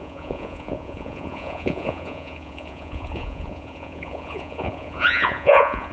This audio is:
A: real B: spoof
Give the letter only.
B